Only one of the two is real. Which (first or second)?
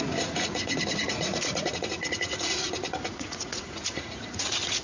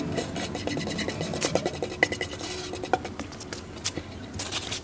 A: second